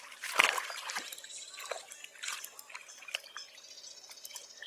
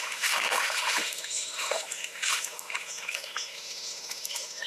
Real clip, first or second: first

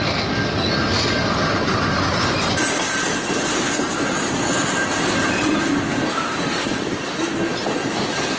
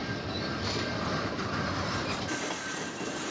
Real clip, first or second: first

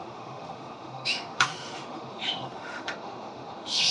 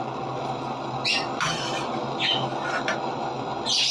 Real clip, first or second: second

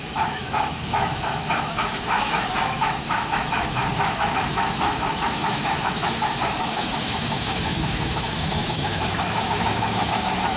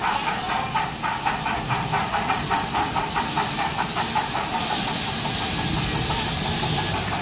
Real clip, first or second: second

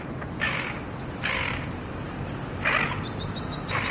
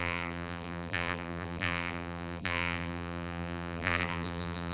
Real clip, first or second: first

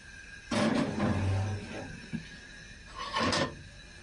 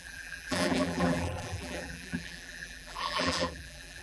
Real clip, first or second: first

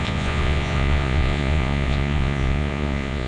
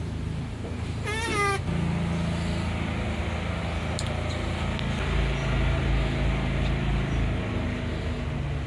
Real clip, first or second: second